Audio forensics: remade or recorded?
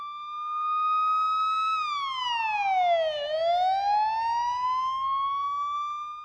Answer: recorded